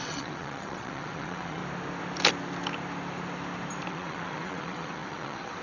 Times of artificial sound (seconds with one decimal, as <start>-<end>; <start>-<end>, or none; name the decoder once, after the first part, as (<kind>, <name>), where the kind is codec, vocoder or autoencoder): 0.0-1.6 (vocoder, WaveNeXt); 3.9-5.6